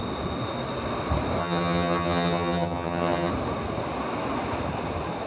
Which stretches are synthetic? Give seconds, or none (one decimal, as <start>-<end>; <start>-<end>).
1.4-3.3